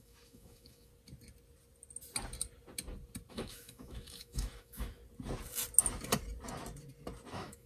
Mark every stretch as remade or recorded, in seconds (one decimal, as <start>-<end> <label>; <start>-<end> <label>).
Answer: 0.0-0.9 remade; 0.9-3.3 recorded; 3.3-5.0 remade; 5.0-7.3 recorded; 7.3-7.7 remade